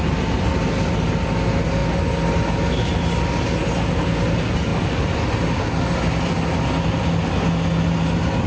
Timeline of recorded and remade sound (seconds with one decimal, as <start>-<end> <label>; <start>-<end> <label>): 0.0-4.7 recorded; 4.7-5.3 remade; 5.3-8.5 recorded